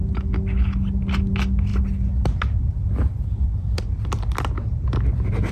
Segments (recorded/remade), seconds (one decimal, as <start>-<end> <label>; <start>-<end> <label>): 0.0-5.5 recorded